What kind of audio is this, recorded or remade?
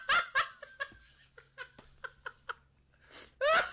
recorded